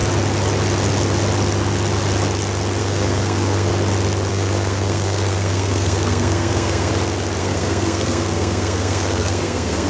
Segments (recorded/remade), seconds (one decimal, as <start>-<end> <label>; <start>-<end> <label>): 0.0-2.8 recorded; 2.8-3.7 remade; 3.7-4.3 recorded; 4.3-6.9 remade; 6.9-7.4 recorded; 7.4-9.9 remade